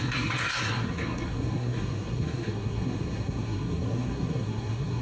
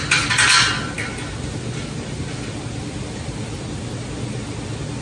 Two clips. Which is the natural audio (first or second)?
second